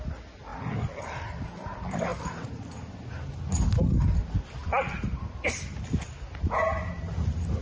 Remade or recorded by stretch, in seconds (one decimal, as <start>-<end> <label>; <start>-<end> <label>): 0.0-7.6 recorded